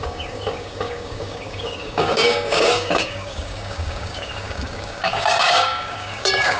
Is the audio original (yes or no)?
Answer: no